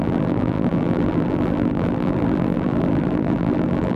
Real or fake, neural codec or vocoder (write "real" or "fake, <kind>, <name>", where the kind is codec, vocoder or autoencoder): fake, vocoder, BigVGAN v2